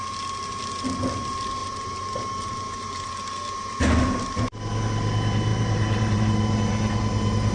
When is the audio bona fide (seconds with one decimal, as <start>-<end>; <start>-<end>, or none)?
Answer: 0.0-1.6; 3.1-5.5; 6.3-7.5